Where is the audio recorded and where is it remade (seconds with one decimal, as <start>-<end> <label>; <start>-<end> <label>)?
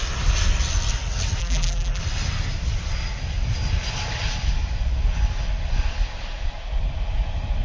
0.0-1.4 recorded; 1.4-2.0 remade; 2.0-7.6 recorded